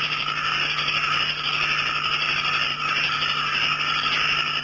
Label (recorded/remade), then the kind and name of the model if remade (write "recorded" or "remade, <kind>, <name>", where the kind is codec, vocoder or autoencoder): recorded